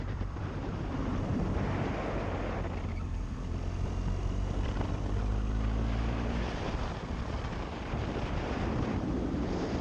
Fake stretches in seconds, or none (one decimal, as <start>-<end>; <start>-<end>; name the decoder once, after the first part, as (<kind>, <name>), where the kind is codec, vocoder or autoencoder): 0.0-1.3 (vocoder, BigVGAN v2); 6.4-9.8